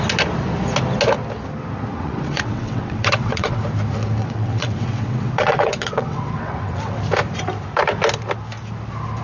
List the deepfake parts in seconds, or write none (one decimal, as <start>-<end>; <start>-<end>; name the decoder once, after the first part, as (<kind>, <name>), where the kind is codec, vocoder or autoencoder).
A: 1.9-3.6 (vocoder, WaveNeXt); 4.2-7.0

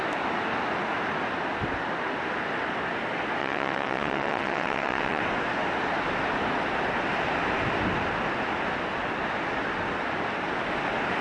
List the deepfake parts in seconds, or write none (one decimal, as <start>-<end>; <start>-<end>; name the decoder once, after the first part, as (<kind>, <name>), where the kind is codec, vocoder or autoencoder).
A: 3.4-5.2 (vocoder, WaveNeXt)

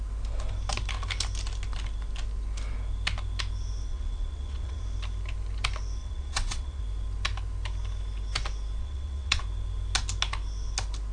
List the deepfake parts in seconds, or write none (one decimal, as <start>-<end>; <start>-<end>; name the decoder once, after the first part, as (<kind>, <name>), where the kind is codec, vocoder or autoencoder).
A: 3.9-4.8 (vocoder, WaveNeXt); 6.0-6.8; 8.8-9.4

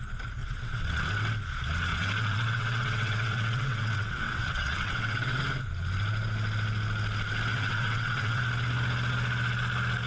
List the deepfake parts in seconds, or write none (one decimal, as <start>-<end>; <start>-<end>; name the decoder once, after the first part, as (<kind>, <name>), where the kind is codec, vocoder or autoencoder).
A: 0.4-1.1 (vocoder, WaveNeXt); 1.9-5.4; 7.5-8.4

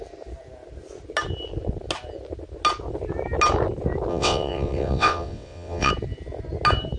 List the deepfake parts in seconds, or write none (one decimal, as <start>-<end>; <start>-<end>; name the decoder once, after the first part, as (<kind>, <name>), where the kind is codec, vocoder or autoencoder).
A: 4.1-5.9 (vocoder, WaveNeXt)

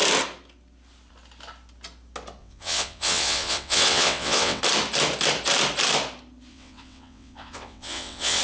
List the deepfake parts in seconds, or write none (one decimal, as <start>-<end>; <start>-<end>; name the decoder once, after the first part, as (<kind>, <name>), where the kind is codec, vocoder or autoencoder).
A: 2.4-4.6 (vocoder, WaveNeXt); 6.5-8.4

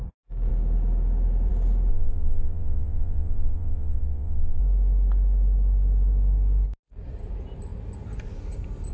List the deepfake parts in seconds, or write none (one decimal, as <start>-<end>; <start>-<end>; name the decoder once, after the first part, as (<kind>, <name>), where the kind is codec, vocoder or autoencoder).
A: 1.9-4.6 (vocoder, WaveNeXt)